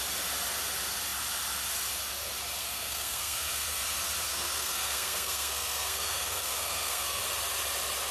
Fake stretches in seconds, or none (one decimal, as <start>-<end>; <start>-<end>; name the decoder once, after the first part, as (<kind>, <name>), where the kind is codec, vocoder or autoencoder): 2.6-3.8 (codec, SNAC); 4.3-7.2